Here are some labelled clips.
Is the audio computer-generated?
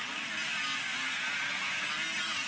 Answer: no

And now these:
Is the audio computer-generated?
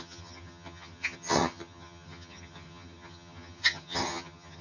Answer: yes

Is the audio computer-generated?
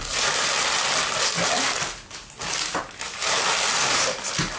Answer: no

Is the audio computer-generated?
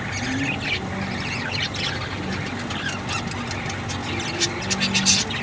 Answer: no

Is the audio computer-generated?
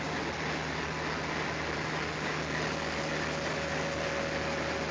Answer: no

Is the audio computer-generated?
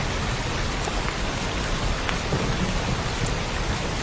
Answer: no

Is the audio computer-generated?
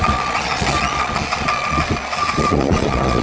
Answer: yes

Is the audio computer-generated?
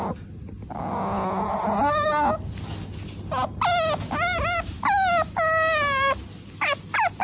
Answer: no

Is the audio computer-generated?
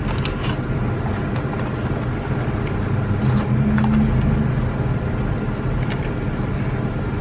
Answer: no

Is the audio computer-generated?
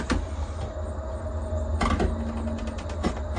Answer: no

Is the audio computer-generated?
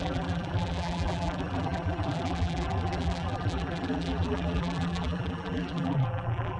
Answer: yes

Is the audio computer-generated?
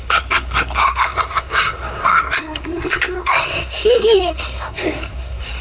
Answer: yes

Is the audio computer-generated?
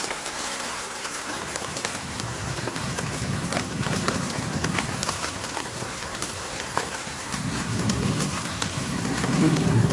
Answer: yes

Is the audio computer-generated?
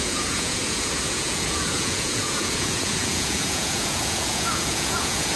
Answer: yes